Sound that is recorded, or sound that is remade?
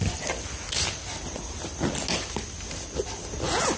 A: recorded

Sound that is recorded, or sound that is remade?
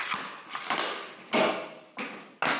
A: recorded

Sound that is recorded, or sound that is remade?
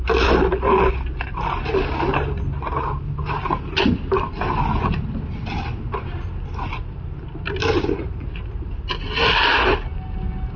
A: recorded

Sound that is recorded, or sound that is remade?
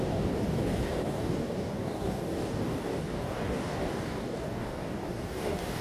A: remade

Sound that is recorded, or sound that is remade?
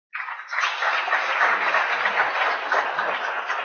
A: recorded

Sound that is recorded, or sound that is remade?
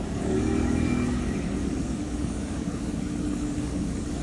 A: remade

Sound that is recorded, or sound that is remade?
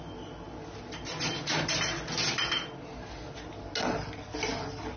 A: recorded